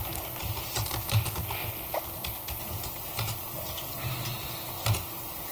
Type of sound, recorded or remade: recorded